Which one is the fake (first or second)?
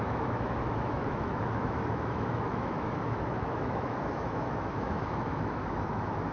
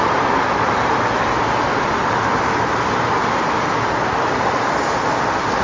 first